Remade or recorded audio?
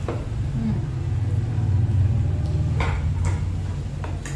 recorded